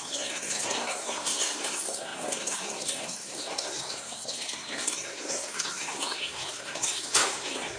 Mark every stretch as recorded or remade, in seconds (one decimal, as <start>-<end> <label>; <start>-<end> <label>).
0.0-7.8 remade